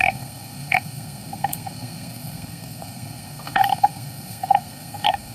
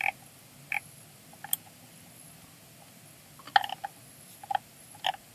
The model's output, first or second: first